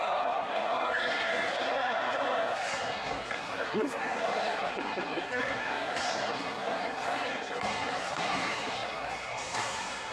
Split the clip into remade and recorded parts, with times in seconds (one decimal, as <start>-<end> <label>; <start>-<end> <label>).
0.0-10.1 remade